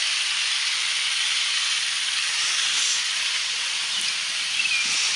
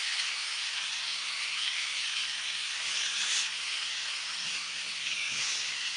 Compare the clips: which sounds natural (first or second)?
first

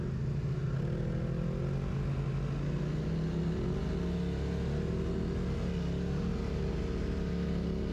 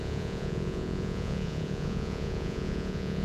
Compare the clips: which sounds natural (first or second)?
first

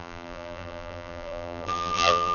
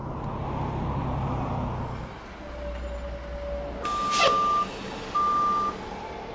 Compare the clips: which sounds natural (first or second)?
second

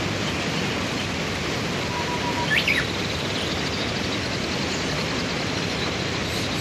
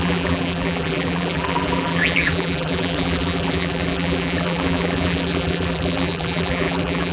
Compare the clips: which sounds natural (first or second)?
first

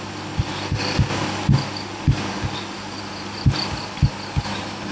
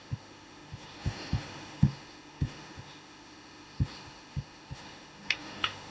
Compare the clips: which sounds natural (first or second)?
first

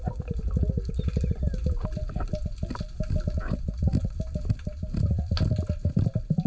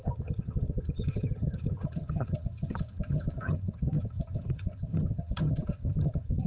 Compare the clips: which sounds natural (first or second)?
first